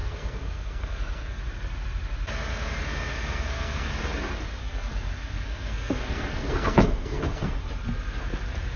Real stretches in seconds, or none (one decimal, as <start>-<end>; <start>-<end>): 1.4-3.1; 3.9-4.6; 7.6-8.8